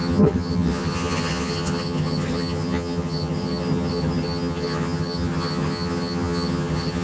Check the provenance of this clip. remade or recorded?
remade